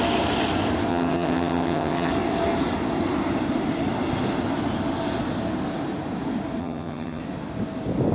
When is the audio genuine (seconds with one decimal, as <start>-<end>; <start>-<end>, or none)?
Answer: 0.0-0.9; 2.1-6.6; 7.2-8.1